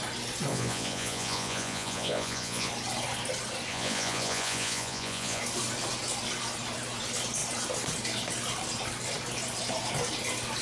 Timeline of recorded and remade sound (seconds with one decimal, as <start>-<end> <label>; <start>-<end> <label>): 0.0-0.5 recorded; 0.5-2.7 remade; 2.7-3.7 recorded; 3.7-5.4 remade; 5.4-10.6 recorded